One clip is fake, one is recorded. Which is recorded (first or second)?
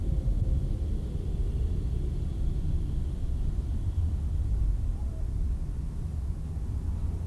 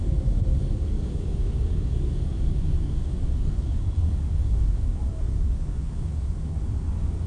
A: first